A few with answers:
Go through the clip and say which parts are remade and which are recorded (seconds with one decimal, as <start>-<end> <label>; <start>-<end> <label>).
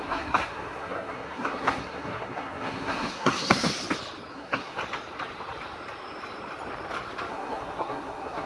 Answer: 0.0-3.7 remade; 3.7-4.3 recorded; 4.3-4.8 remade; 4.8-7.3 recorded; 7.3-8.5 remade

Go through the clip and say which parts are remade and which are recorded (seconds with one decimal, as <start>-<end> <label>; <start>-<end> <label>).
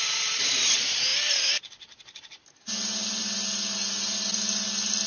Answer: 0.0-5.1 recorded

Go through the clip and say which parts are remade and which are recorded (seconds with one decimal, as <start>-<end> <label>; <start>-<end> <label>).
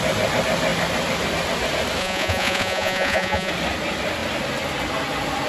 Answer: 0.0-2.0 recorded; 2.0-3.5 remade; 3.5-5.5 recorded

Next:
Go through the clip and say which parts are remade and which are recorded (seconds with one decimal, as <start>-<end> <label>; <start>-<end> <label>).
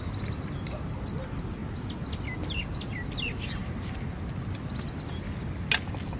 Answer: 0.0-6.2 recorded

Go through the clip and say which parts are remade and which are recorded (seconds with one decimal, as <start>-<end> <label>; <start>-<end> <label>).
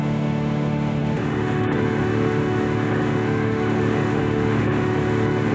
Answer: 0.0-5.5 remade